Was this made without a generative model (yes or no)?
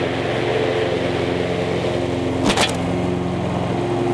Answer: yes